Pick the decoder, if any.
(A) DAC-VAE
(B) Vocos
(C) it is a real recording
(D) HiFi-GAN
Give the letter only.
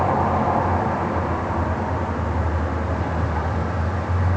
C